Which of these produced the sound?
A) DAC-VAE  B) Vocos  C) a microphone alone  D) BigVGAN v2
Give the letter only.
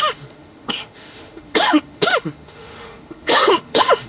A